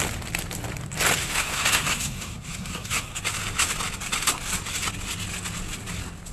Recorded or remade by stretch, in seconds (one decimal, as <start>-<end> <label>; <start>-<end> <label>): 0.0-1.2 recorded; 1.2-3.2 remade; 3.2-6.3 recorded